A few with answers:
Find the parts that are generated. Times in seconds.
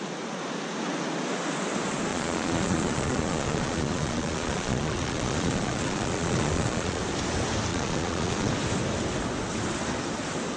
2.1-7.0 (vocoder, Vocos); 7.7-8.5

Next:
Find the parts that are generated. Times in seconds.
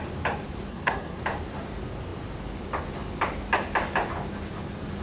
0.7-1.2 (codec, SNAC)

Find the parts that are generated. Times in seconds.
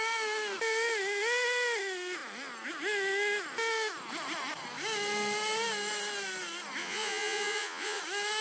6.8-8.0 (vocoder, Vocos)